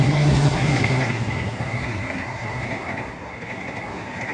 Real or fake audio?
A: fake